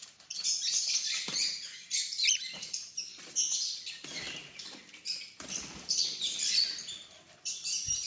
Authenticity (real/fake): real